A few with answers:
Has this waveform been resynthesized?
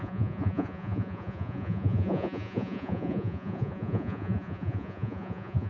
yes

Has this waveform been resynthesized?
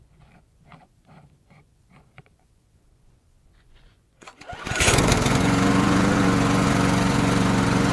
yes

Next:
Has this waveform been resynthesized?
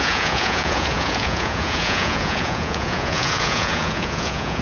yes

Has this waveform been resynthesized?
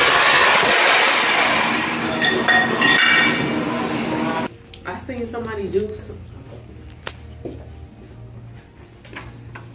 no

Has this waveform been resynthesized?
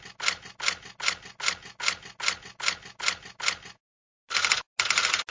no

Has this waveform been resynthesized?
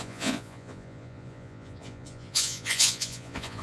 yes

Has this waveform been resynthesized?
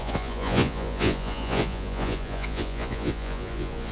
yes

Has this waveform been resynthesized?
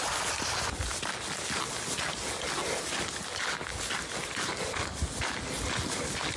no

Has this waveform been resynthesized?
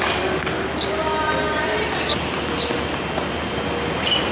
no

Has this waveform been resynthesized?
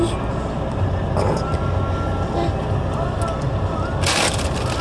no